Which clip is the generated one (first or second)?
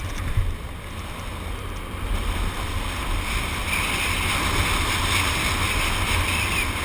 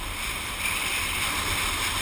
second